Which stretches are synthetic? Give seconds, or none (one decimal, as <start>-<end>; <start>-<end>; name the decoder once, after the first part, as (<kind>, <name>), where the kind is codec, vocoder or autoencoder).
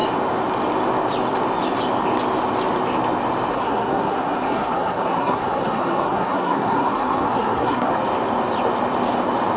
3.5-7.9 (codec, SNAC)